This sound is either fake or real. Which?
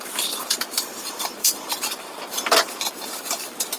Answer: fake